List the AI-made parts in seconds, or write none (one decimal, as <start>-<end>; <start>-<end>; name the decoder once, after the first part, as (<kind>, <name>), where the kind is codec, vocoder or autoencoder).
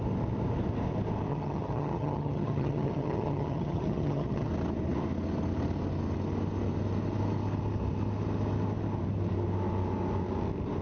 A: 1.3-4.5 (vocoder, HiFi-GAN)